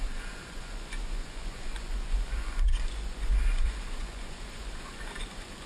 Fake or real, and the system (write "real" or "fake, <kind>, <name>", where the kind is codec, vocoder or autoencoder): fake, vocoder, Vocos